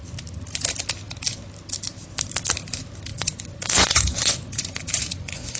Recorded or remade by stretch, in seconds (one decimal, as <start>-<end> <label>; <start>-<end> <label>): 0.0-3.1 recorded; 3.1-5.6 remade